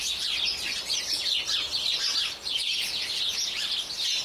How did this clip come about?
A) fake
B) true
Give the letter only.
B